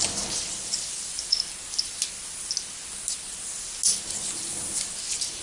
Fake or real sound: real